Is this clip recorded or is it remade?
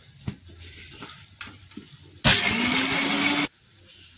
recorded